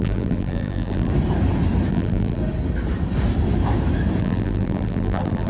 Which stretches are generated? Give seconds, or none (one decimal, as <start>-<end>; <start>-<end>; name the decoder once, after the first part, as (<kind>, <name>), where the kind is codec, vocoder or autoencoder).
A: 0.0-1.1 (vocoder, BigVGAN v2); 1.9-2.4; 4.2-5.5